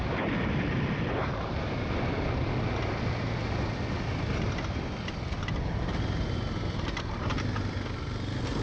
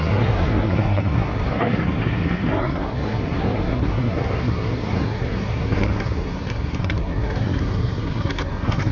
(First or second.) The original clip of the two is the first